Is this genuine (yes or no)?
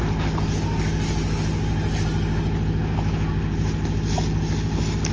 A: yes